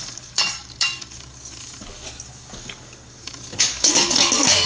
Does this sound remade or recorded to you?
remade